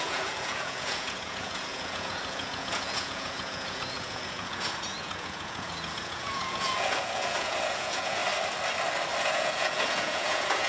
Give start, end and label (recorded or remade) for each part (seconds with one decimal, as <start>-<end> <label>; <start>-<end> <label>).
0.0-8.2 remade; 8.2-9.2 recorded; 9.2-10.7 remade